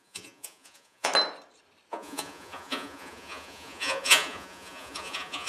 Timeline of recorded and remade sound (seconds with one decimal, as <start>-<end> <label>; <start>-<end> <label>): 0.0-1.1 remade; 1.1-1.9 recorded; 1.9-5.5 remade

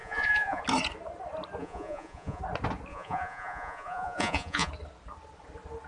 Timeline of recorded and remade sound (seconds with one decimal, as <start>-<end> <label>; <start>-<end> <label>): 0.0-0.6 remade; 0.6-1.6 recorded; 1.6-2.4 remade; 2.4-2.9 recorded; 2.9-4.7 remade; 4.7-5.9 recorded

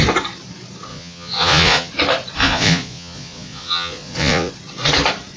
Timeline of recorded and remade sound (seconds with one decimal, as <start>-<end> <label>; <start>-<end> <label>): 0.0-0.9 recorded; 0.9-1.9 remade; 1.9-2.4 recorded; 2.4-4.5 remade; 4.5-5.4 recorded

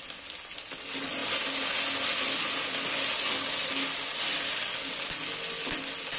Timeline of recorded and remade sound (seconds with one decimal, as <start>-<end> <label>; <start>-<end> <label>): 0.0-6.2 recorded

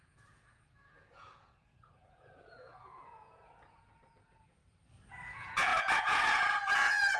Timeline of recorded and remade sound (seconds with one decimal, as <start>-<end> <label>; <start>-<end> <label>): 0.0-4.6 remade; 4.6-5.3 recorded; 5.3-7.2 remade

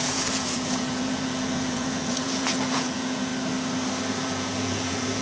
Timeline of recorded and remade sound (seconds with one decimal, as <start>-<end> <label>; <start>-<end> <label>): 0.0-3.3 remade; 3.3-4.1 recorded; 4.1-5.2 remade

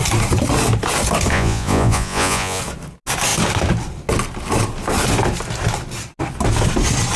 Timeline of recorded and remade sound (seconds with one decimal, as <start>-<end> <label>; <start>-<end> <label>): 0.0-1.3 recorded; 1.3-2.6 remade; 2.6-7.2 recorded